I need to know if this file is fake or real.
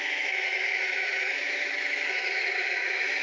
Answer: fake